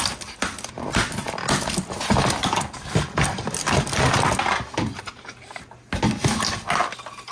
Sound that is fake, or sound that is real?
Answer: real